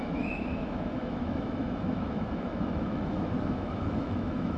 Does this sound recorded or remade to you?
remade